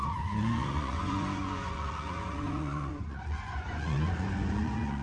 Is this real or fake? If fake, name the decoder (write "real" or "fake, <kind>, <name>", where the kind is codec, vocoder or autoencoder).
fake, vocoder, Vocos